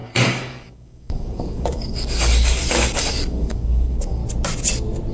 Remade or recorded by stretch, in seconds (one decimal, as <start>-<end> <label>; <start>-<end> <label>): 0.0-4.2 remade; 4.2-5.1 recorded